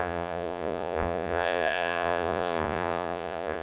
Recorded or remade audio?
remade